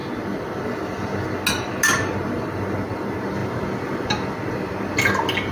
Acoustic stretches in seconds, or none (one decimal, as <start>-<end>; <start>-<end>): 0.0-5.5